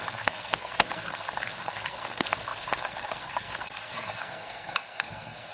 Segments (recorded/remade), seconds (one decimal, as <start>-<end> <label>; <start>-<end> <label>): 0.0-5.5 remade